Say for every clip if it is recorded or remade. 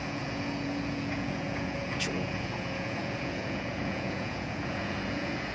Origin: remade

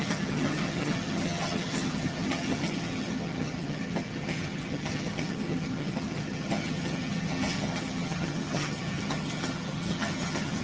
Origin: remade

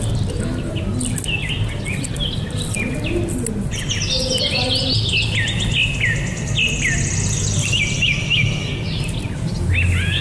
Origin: recorded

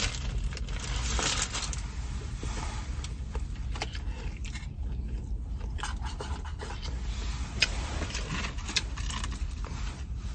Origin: recorded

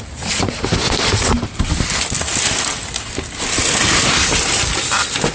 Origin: recorded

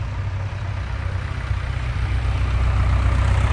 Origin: recorded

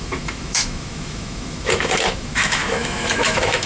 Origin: remade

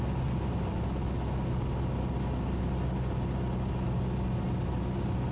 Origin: recorded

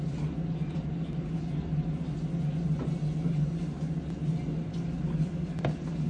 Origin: recorded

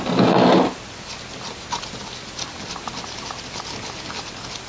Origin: recorded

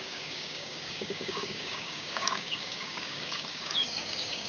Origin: remade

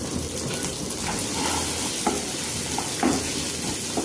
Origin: recorded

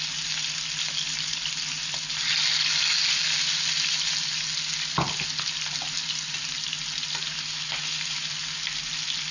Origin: recorded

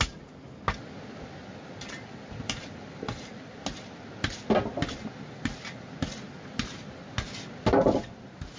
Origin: recorded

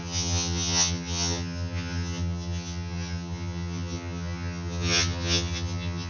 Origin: remade